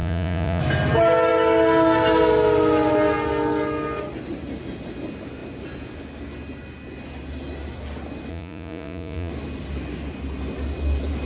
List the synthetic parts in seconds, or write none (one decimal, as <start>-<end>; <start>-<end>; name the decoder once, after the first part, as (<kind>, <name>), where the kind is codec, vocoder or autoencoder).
0.0-0.6 (vocoder, Vocos); 8.3-9.3